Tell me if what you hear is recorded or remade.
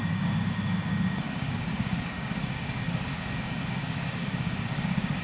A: remade